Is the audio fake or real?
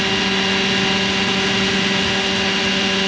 real